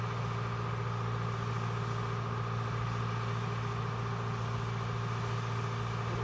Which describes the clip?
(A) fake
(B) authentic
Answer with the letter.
B